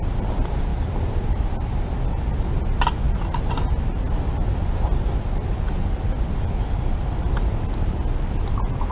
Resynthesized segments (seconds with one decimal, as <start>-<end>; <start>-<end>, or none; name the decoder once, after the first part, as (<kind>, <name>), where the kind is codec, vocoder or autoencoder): none